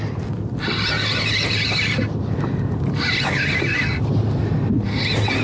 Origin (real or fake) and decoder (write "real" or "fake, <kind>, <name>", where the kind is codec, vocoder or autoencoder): real